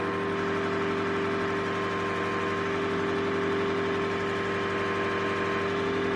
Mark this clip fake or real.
real